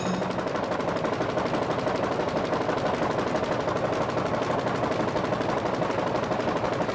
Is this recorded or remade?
recorded